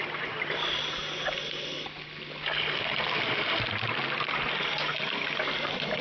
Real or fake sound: real